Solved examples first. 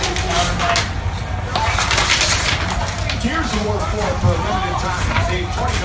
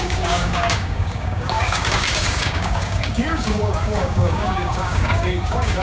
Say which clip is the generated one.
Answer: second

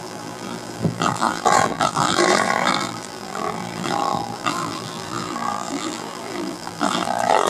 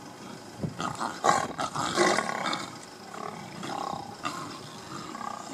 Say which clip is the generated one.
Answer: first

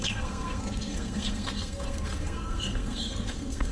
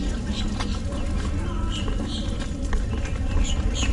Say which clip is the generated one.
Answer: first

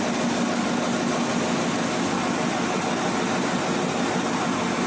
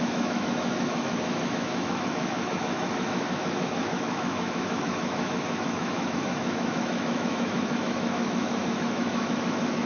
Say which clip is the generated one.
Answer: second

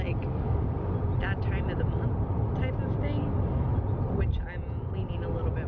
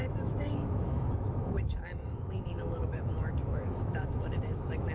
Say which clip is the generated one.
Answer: second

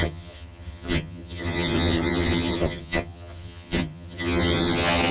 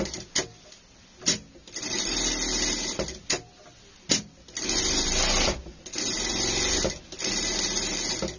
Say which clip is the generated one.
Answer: first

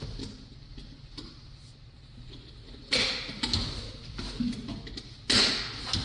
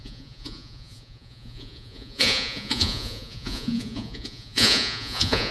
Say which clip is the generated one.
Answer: second